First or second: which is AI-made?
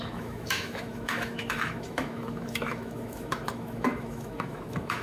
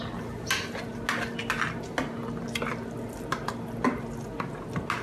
first